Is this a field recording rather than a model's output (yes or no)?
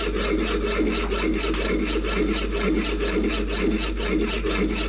yes